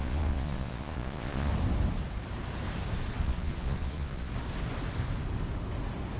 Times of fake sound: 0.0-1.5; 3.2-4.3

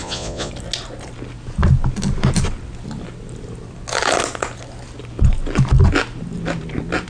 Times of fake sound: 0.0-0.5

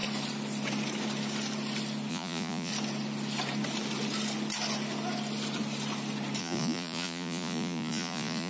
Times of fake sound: 2.1-2.7; 6.4-8.5